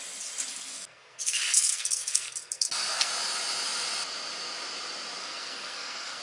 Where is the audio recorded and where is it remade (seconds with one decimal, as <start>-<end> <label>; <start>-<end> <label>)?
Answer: 0.0-0.5 recorded; 0.5-3.1 remade; 3.1-5.2 recorded; 5.2-6.2 remade